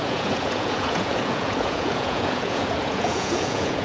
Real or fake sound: fake